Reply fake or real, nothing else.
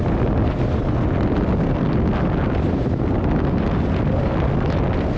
real